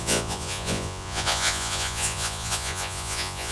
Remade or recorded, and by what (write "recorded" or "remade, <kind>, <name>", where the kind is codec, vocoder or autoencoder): remade, vocoder, Vocos